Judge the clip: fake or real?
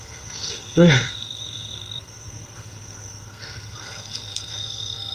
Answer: fake